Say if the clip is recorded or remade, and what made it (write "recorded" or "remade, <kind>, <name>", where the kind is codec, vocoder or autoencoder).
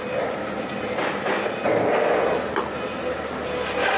recorded